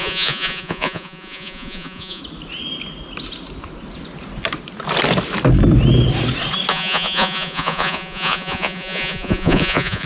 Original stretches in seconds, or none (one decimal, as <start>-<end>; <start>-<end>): 2.2-6.7